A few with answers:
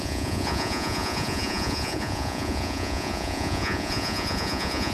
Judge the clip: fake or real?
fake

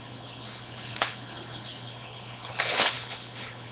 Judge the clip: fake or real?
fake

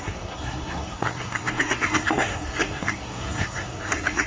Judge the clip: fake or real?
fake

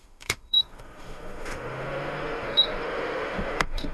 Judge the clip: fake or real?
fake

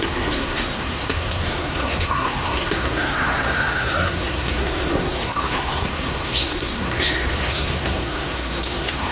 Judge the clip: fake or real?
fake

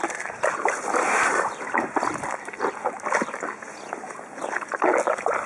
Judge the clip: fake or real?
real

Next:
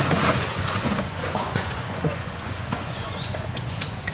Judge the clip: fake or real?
fake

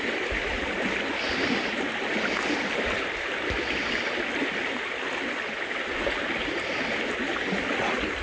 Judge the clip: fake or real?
real